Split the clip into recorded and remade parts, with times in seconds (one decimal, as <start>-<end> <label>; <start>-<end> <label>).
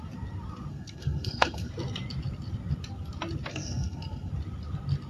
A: 0.0-0.7 recorded; 0.7-1.7 remade; 1.7-3.5 recorded; 3.5-4.3 remade; 4.3-5.1 recorded